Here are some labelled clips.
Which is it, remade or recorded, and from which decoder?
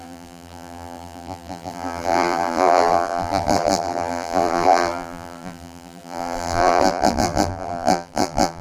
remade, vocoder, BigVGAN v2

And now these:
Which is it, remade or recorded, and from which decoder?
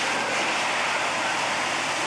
recorded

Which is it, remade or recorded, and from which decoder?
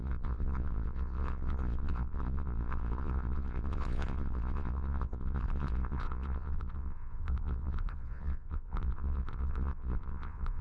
remade, vocoder, Vocos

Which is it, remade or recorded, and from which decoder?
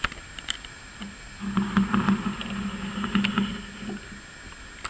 recorded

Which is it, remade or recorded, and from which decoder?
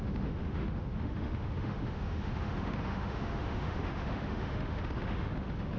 remade, autoencoder, DAC-VAE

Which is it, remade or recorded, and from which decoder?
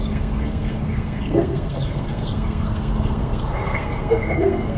remade, codec, SNAC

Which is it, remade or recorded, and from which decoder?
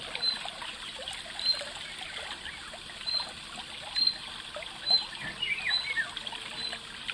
recorded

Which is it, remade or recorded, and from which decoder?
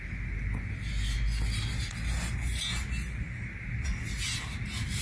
recorded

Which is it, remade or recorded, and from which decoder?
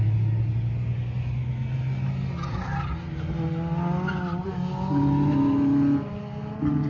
recorded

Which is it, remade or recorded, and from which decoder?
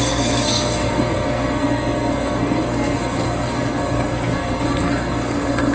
remade, codec, SNAC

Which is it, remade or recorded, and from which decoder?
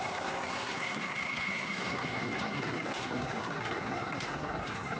remade, codec, SNAC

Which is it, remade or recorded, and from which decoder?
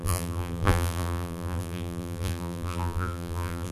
remade, vocoder, BigVGAN v2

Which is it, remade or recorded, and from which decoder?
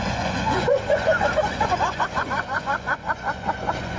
remade, vocoder, Vocos